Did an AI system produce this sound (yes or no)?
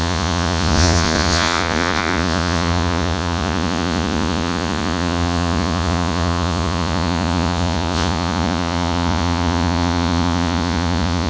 yes